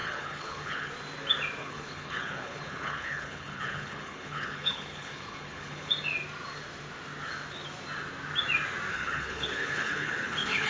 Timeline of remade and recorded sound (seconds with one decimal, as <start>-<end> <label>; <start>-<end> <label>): 0.0-0.9 remade; 0.9-1.6 recorded; 1.6-5.9 remade; 5.9-8.9 recorded; 8.9-10.7 remade